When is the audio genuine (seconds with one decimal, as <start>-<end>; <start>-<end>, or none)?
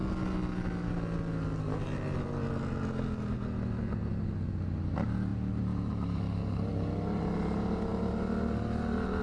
0.0-9.2